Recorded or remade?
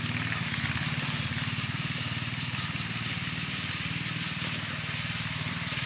recorded